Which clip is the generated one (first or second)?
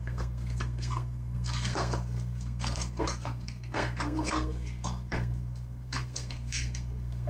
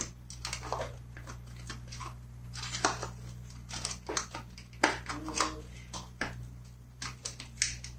first